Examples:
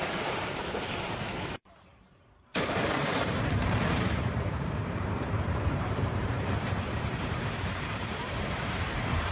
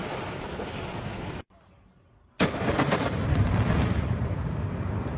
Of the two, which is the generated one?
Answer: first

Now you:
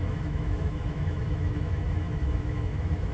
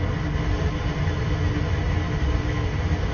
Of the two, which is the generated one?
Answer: first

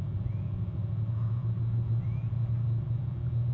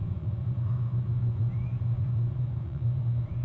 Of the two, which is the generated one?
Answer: second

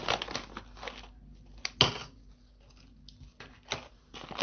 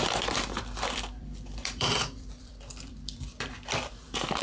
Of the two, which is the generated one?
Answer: second